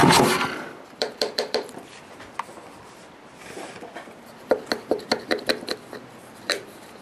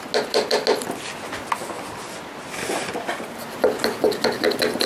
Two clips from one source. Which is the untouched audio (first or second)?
second